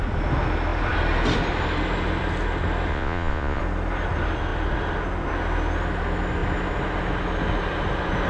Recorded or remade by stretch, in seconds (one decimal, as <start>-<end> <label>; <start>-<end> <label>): 0.0-2.9 recorded; 2.9-3.6 remade; 3.6-8.3 recorded

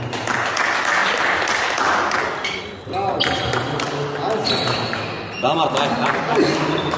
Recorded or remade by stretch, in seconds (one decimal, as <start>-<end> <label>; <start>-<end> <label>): 0.0-7.0 recorded

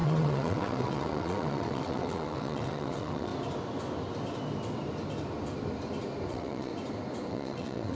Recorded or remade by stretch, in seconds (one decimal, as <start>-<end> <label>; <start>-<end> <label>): 0.0-3.3 remade; 3.3-6.3 recorded; 6.3-6.7 remade; 6.7-7.3 recorded; 7.3-7.9 remade

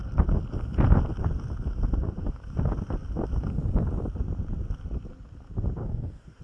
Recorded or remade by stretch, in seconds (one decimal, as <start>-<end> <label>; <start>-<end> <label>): 0.0-5.8 recorded; 5.8-6.4 remade